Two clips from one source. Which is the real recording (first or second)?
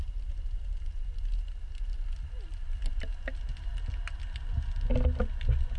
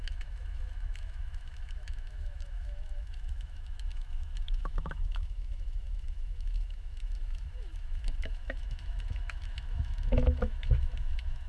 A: first